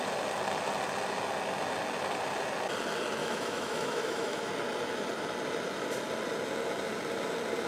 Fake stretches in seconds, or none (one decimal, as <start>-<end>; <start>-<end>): 3.2-4.5